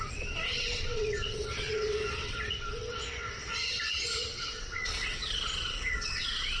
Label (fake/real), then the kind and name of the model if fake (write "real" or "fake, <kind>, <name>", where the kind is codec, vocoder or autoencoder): fake, vocoder, WaveNeXt